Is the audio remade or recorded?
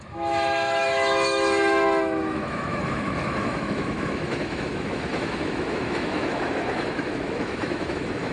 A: remade